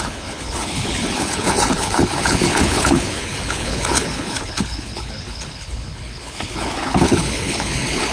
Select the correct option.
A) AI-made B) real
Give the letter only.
A